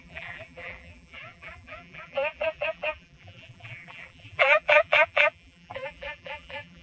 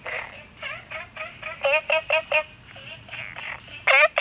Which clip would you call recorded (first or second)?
second